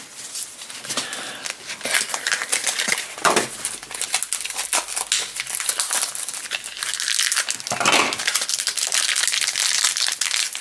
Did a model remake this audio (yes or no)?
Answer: no